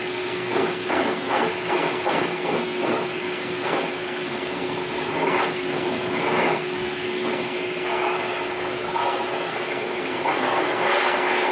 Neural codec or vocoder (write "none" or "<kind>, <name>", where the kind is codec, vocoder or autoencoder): codec, SNAC